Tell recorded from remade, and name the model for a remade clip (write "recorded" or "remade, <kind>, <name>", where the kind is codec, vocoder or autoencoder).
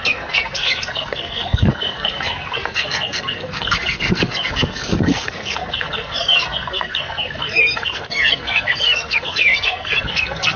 remade, codec, SNAC